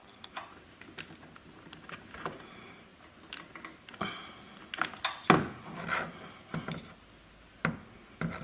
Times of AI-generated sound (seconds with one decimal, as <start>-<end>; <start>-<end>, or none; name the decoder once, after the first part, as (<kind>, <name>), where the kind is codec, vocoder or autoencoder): none